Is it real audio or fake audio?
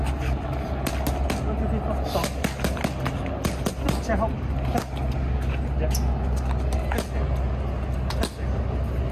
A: real